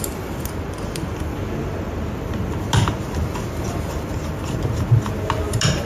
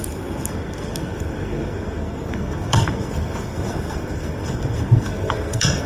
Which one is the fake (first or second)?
second